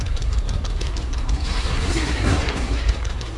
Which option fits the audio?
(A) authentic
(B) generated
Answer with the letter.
B